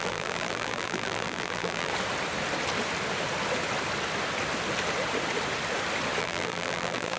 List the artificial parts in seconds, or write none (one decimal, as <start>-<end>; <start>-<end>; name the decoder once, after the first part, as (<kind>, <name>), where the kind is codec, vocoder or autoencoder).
0.0-1.9 (vocoder, BigVGAN v2); 6.2-7.2